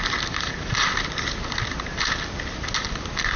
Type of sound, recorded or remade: recorded